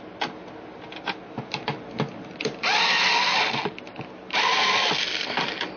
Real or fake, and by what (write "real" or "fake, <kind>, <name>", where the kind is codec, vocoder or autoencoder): real